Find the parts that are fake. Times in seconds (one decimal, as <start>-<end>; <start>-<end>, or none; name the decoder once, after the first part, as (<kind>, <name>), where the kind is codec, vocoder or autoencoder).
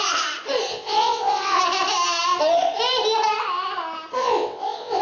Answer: 0.7-1.6 (vocoder, WaveNeXt); 4.2-5.0